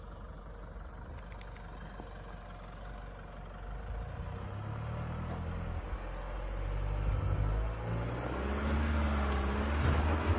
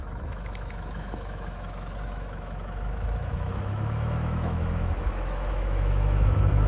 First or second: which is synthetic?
second